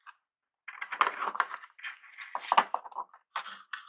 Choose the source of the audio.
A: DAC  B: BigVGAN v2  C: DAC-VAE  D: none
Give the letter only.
D